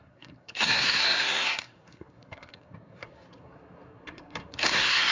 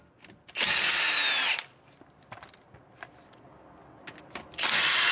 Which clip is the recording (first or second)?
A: second